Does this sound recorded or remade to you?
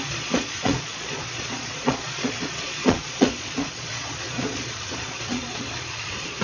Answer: remade